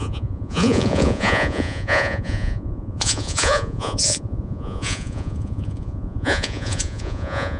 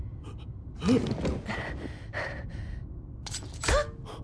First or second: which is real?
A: second